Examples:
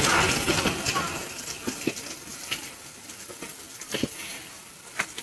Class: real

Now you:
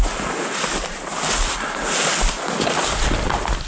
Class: real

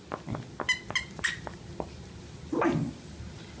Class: real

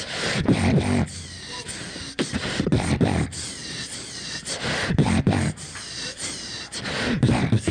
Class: real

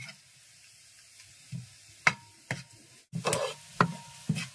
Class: real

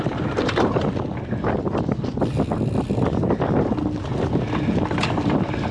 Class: real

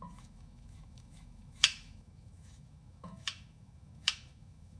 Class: fake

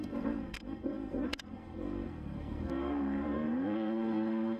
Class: fake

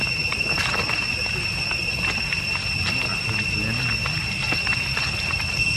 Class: real